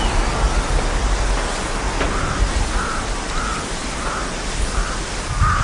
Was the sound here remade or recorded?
recorded